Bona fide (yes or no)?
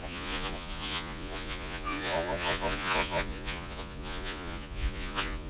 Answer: no